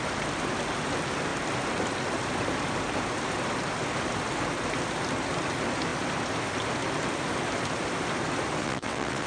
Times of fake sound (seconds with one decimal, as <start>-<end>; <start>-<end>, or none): 8.6-9.3